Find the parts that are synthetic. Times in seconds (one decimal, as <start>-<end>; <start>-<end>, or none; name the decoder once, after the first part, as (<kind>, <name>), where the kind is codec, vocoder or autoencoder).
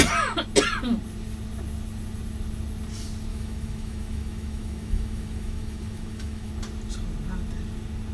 3.3-6.5 (autoencoder, DAC-VAE)